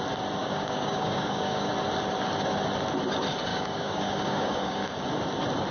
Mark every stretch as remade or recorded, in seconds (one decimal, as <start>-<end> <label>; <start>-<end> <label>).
0.0-0.4 recorded; 0.4-1.7 remade; 1.7-3.5 recorded; 3.5-4.9 remade; 4.9-5.7 recorded